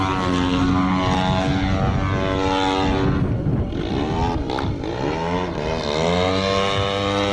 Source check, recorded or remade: recorded